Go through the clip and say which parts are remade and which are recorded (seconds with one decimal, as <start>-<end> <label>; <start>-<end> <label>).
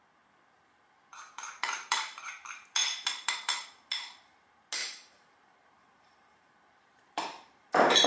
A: 0.0-1.1 recorded; 1.1-2.2 remade; 2.2-4.8 recorded; 4.8-8.1 remade